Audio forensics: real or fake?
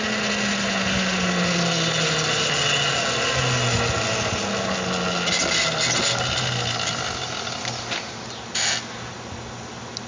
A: real